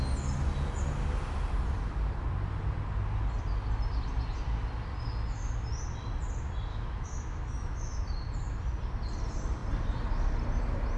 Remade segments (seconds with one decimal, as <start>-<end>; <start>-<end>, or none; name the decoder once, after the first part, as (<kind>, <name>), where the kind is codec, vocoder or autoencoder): 6.7-8.1 (autoencoder, DAC-VAE)